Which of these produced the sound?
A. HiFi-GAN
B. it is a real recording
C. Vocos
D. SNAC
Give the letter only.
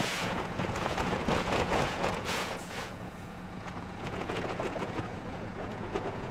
C